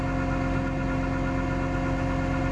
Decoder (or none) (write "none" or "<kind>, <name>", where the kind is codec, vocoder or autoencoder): none